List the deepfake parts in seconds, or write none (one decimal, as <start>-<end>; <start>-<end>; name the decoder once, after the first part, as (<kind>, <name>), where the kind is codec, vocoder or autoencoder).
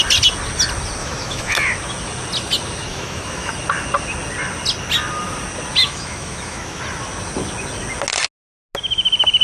1.0-1.5 (autoencoder, DAC-VAE); 2.9-3.5; 5.8-6.8